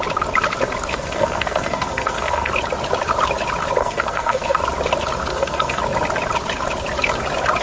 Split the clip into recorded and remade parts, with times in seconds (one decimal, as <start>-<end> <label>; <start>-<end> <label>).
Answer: 0.0-0.9 recorded; 0.9-2.5 remade; 2.5-3.8 recorded; 3.8-4.6 remade; 4.6-5.3 recorded; 5.3-5.8 remade; 5.8-7.6 recorded